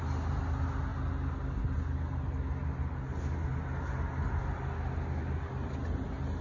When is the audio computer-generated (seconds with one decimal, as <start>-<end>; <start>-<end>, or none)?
none